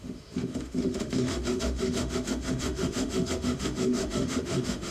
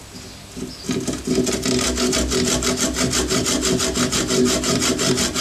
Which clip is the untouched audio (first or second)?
second